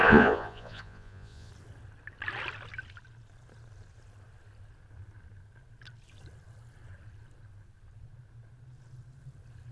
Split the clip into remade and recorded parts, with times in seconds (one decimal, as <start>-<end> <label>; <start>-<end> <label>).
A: 0.0-1.5 remade; 1.5-9.7 recorded